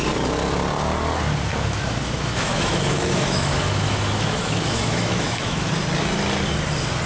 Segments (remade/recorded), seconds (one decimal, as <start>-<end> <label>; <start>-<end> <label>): 0.0-1.5 recorded; 1.5-5.7 remade; 5.7-7.1 recorded